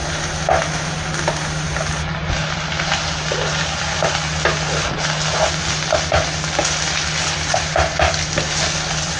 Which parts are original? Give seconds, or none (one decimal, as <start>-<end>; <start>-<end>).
0.0-9.2